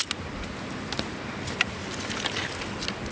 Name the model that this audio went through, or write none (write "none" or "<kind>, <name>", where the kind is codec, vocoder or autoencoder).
none